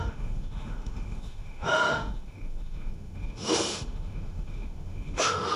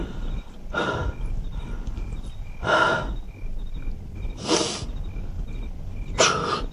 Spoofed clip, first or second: first